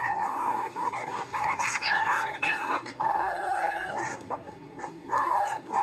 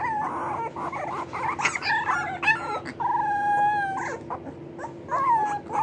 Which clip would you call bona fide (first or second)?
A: second